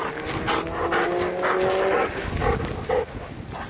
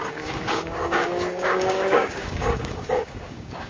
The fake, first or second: second